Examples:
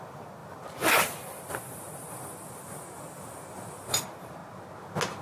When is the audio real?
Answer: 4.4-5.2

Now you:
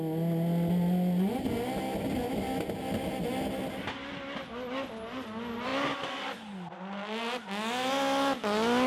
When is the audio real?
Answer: 0.0-8.9

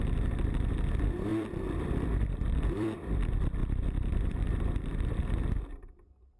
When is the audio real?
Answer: 0.0-1.3; 3.2-3.6; 5.2-6.4